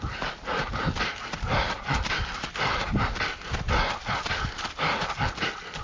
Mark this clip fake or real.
real